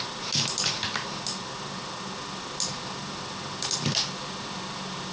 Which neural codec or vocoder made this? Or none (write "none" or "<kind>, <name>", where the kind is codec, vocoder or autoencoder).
none